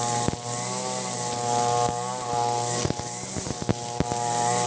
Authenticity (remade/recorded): recorded